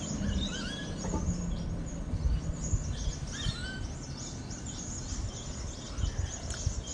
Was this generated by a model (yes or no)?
no